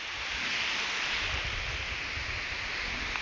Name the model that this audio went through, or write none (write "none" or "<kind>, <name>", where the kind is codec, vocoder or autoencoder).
none